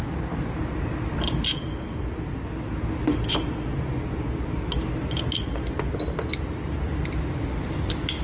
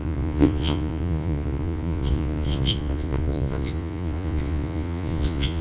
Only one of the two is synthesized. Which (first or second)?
second